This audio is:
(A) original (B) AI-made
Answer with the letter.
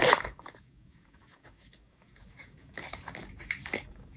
B